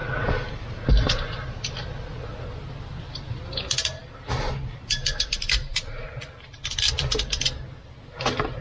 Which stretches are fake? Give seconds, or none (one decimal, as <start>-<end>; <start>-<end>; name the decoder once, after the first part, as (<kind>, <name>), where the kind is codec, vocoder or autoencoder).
none